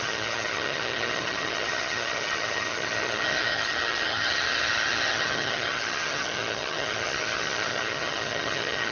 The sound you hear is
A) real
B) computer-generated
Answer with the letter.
B